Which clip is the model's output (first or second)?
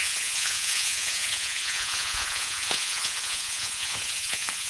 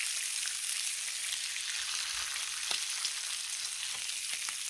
first